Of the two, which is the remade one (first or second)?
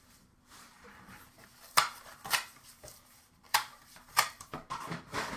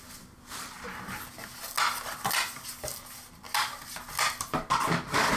first